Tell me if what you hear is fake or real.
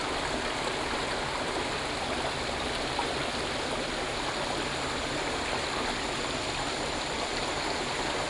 real